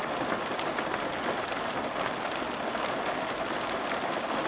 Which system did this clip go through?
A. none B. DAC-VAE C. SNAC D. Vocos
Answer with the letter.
A